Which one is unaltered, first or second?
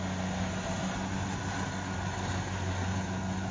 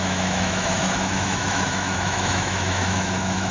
first